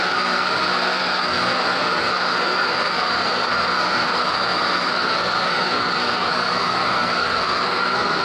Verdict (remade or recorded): remade